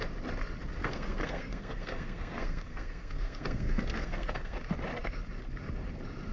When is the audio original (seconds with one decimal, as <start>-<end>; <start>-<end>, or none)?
0.0-0.8; 4.6-6.3